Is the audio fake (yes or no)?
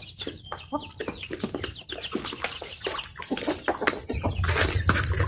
no